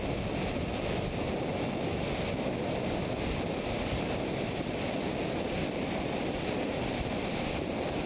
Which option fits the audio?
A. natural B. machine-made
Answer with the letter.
A